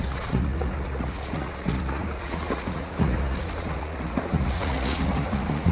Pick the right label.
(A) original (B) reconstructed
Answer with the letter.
B